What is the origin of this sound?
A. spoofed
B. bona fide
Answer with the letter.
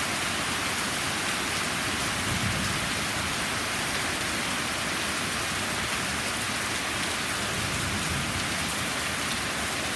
B